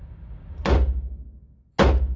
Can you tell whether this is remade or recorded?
recorded